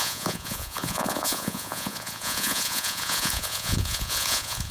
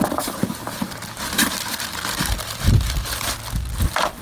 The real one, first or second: second